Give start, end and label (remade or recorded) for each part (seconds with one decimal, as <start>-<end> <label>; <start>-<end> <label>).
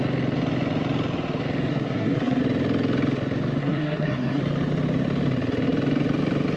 0.0-1.7 recorded; 1.7-2.4 remade; 2.4-3.6 recorded; 3.6-4.4 remade; 4.4-6.6 recorded